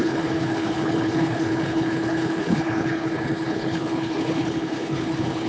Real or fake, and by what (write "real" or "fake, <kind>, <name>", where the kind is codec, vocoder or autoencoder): fake, codec, HILCodec